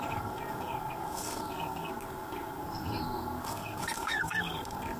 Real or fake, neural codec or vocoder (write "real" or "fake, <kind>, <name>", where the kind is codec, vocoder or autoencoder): fake, codec, SNAC